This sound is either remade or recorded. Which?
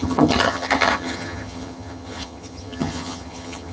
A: remade